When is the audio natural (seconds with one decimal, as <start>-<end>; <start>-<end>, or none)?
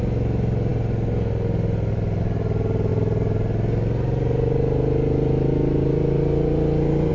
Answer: 0.0-7.1